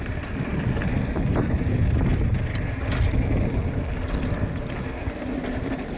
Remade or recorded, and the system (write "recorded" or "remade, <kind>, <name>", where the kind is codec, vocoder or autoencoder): recorded